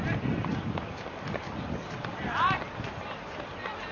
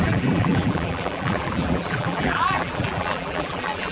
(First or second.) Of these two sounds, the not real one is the second